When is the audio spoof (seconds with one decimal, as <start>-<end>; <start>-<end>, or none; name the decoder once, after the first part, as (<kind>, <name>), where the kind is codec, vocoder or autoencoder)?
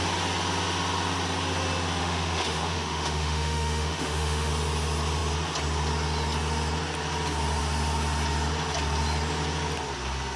2.0-4.5 (autoencoder, DAC-VAE)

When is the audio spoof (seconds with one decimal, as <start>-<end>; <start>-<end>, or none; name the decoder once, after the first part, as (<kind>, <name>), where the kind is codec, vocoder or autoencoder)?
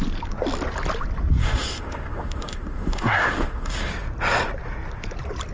1.4-3.9 (autoencoder, DAC-VAE)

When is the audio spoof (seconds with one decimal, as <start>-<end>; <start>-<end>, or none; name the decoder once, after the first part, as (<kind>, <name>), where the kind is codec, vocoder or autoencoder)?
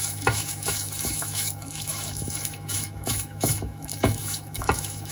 0.0-5.1 (autoencoder, DAC-VAE)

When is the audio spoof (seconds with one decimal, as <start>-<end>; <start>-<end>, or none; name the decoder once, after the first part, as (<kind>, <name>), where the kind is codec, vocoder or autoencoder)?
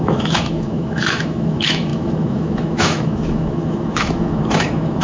0.0-5.0 (autoencoder, DAC-VAE)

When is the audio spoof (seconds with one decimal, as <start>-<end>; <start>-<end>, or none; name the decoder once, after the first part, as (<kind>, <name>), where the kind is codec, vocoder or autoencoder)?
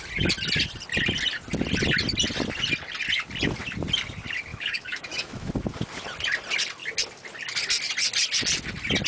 4.5-5.5 (autoencoder, DAC-VAE)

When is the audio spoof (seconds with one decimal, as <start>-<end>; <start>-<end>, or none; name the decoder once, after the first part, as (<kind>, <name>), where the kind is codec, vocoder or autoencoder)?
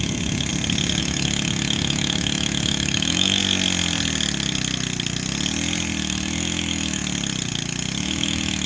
0.0-0.5 (autoencoder, DAC-VAE); 1.0-3.4; 6.0-7.0; 8.0-8.7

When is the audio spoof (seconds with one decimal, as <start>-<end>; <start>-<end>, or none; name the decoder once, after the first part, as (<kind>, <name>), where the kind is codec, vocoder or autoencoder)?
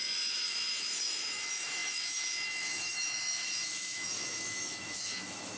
0.0-5.6 (autoencoder, DAC-VAE)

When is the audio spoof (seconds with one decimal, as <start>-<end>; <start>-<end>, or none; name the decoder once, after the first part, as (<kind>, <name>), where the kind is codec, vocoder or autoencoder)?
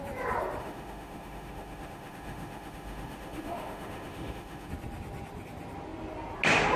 0.6-4.7 (autoencoder, DAC-VAE)